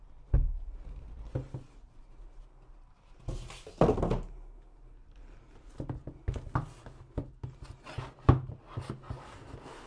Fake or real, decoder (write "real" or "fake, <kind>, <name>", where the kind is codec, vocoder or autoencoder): real